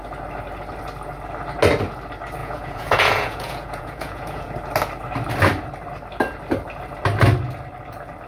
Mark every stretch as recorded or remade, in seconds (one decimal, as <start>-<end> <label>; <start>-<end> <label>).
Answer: 0.0-2.4 recorded; 2.4-4.5 remade; 4.5-8.3 recorded